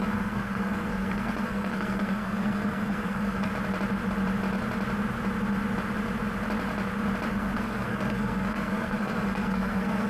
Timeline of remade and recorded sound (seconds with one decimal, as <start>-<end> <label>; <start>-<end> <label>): 0.0-3.5 remade; 3.5-7.3 recorded; 7.3-10.1 remade

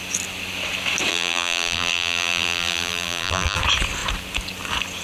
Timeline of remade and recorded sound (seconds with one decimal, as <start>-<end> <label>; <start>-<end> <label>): 0.0-1.1 recorded; 1.1-3.6 remade; 3.6-5.0 recorded

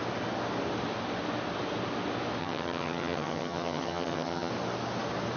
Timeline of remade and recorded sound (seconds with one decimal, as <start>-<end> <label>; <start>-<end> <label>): 0.0-2.4 recorded; 2.4-4.5 remade; 4.5-5.4 recorded

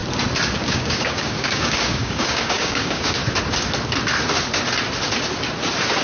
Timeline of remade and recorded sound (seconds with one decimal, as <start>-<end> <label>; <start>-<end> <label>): 0.0-0.6 recorded; 0.6-3.2 remade; 3.2-6.0 recorded

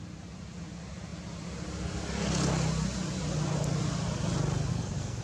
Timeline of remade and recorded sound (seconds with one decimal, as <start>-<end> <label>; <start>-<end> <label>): 0.0-4.7 recorded; 4.7-5.2 remade

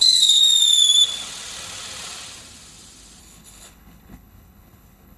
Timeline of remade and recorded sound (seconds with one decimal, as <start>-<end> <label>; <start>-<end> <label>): 0.0-0.4 remade; 0.4-3.2 recorded; 3.2-5.2 remade